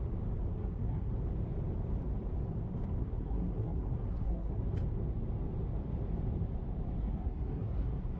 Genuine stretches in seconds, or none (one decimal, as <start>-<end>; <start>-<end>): 0.0-0.5; 1.1-3.0; 4.6-7.0